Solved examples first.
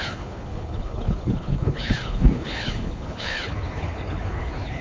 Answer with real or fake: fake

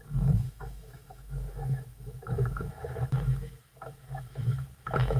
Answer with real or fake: fake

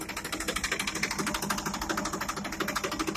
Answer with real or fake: real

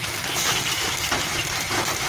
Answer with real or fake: real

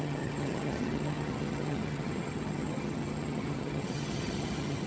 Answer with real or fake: fake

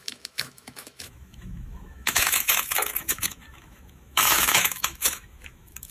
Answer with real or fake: fake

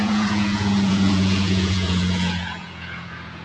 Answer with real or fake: fake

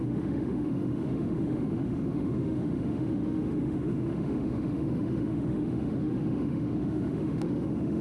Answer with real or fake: fake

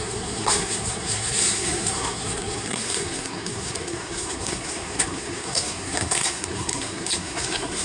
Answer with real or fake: fake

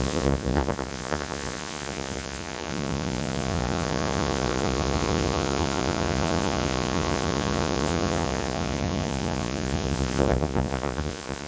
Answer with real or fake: fake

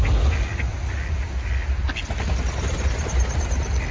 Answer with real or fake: real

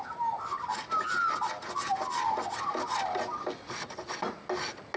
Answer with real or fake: real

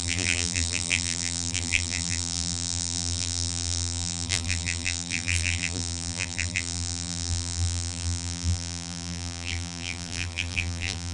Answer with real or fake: fake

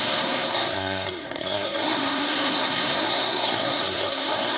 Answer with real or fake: fake